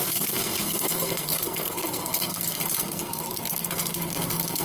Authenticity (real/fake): fake